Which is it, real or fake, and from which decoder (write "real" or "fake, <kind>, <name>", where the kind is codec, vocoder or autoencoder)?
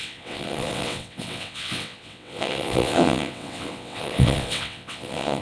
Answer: fake, vocoder, WaveNeXt